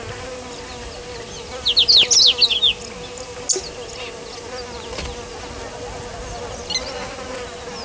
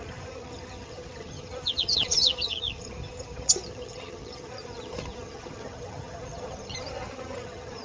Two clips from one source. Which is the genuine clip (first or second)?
first